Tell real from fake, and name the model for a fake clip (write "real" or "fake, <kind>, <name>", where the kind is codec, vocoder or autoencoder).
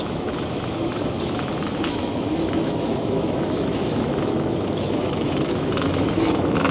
fake, autoencoder, DAC-VAE